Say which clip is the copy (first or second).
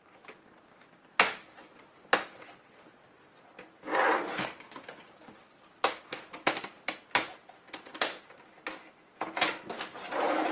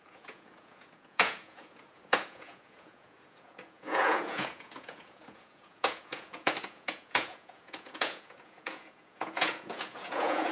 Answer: second